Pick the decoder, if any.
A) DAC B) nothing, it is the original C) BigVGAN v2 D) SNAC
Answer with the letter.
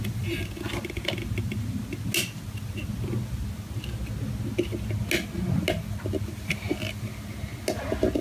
B